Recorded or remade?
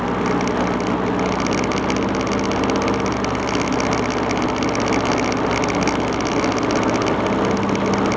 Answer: recorded